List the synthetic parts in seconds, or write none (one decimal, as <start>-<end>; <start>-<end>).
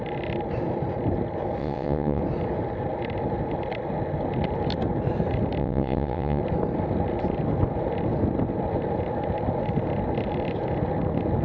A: 1.6-2.2; 5.6-6.4